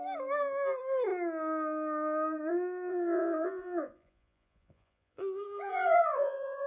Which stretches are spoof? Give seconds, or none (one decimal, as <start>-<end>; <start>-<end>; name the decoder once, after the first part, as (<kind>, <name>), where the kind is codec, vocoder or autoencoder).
2.9-6.7 (vocoder, Vocos)